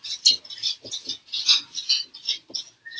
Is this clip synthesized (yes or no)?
no